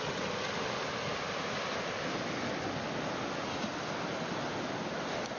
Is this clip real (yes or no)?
yes